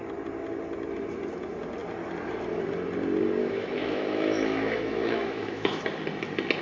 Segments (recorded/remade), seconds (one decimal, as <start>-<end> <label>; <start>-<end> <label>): 0.0-3.4 recorded; 3.4-5.8 remade; 5.8-6.6 recorded